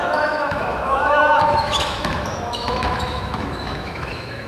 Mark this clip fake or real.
fake